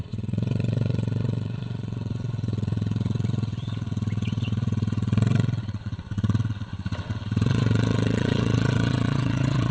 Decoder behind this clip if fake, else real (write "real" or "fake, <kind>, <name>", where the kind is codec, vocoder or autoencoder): fake, vocoder, WaveNeXt